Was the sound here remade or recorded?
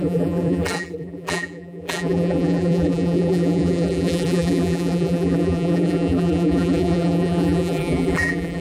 remade